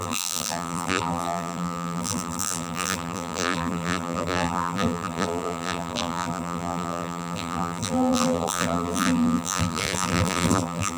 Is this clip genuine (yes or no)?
no